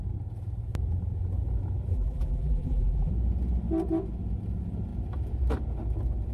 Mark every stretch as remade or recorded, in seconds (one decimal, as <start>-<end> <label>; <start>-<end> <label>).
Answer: 0.0-1.9 recorded; 1.9-3.1 remade; 3.1-6.3 recorded